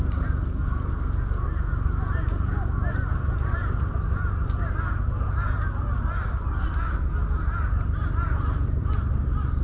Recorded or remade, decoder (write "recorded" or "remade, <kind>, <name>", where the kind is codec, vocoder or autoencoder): recorded